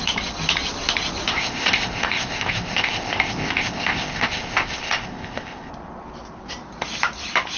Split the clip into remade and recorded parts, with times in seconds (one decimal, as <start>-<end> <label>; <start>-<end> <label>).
0.0-1.3 recorded; 1.3-5.7 remade; 5.7-7.6 recorded